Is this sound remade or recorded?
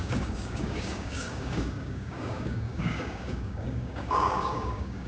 remade